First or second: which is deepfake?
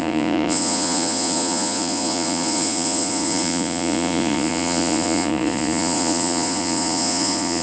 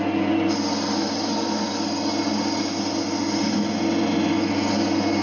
first